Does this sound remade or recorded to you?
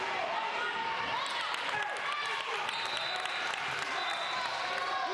recorded